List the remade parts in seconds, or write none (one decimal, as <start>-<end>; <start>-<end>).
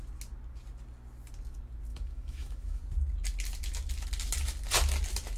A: 1.9-2.8